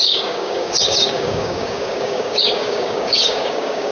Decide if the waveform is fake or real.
fake